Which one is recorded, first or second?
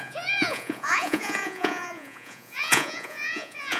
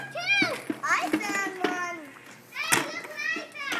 second